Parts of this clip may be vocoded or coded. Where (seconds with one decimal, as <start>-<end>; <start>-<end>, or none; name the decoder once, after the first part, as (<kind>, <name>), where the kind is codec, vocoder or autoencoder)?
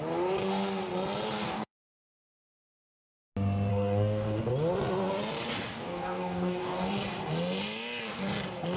1.5-3.0 (codec, DAC); 3.7-4.4; 5.7-6.9